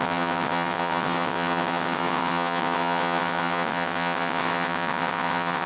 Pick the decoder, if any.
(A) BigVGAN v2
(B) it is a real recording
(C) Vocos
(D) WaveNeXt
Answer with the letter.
D